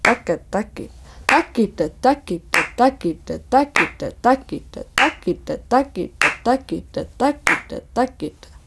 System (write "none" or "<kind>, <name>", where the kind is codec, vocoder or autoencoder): none